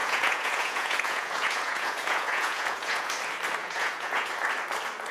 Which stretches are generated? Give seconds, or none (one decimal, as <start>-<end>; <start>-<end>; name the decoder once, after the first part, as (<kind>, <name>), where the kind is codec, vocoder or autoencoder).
0.0-3.1 (vocoder, Vocos); 3.6-4.3